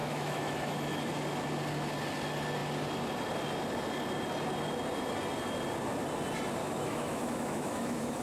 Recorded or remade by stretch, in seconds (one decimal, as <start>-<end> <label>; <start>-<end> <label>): 0.0-1.1 remade; 1.1-6.6 recorded; 6.6-8.2 remade